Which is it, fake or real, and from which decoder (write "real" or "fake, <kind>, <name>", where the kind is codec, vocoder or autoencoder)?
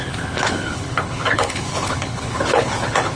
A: fake, codec, HILCodec